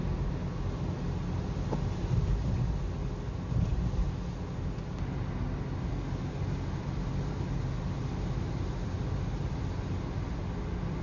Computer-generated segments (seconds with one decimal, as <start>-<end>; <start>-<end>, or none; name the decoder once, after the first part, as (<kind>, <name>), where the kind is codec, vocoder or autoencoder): none